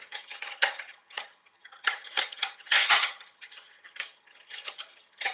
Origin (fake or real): fake